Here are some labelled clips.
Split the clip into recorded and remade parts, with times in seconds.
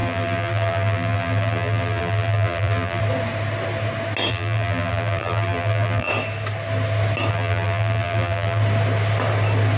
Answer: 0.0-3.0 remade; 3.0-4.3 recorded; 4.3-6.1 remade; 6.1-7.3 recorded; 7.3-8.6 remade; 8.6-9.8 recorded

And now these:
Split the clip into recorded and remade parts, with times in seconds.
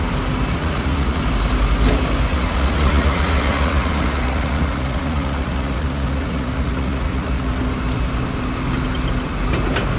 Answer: 0.0-0.6 recorded; 0.6-1.2 remade; 1.2-2.3 recorded; 2.3-7.5 remade; 7.5-10.0 recorded